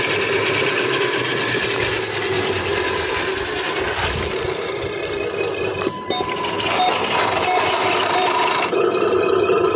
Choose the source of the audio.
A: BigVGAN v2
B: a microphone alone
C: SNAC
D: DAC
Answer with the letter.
B